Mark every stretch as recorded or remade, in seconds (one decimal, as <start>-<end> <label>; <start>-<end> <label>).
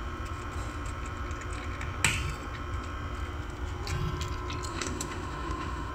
0.0-4.7 recorded; 4.7-5.9 remade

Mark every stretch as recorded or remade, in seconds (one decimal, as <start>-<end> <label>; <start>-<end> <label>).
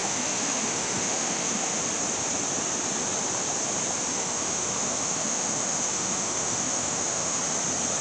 0.0-1.8 remade; 1.8-4.1 recorded; 4.1-7.4 remade; 7.4-8.0 recorded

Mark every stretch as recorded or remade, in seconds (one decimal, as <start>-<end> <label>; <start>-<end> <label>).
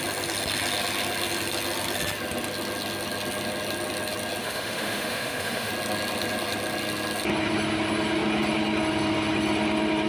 0.0-4.4 recorded; 4.4-5.7 remade; 5.7-10.1 recorded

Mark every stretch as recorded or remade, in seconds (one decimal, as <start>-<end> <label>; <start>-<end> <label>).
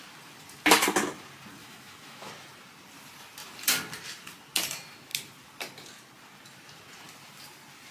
0.0-1.6 recorded; 1.6-2.3 remade; 2.3-7.9 recorded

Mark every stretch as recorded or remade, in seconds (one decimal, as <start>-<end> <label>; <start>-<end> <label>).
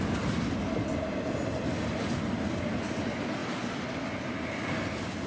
0.0-5.3 recorded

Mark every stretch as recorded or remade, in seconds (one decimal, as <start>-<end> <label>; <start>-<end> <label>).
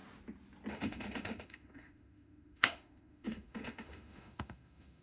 0.0-0.7 recorded; 0.7-5.0 remade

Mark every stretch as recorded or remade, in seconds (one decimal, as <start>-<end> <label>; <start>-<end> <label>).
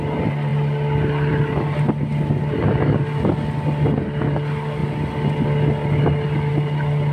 0.0-7.1 recorded